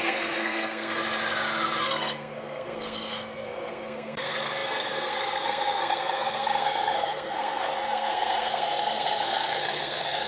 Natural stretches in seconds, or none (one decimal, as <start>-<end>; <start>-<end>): 1.0-1.8